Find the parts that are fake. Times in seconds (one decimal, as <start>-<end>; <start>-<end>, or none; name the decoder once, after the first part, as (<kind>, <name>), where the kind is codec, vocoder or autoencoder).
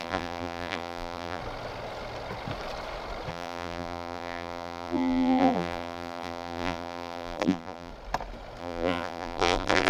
0.0-1.4 (vocoder, BigVGAN v2); 3.3-7.9; 8.6-9.9